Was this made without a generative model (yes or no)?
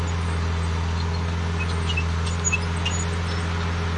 yes